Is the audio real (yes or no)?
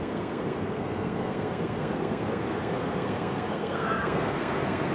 no